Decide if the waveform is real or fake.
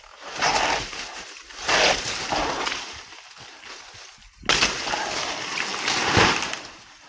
real